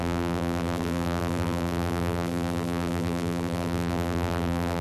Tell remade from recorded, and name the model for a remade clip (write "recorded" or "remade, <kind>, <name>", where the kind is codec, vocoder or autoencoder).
remade, vocoder, BigVGAN v2